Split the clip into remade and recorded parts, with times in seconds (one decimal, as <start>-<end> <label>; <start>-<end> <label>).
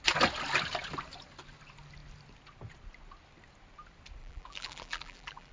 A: 0.0-4.2 recorded; 4.2-5.5 remade